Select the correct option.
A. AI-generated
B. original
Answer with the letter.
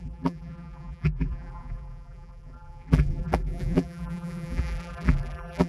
A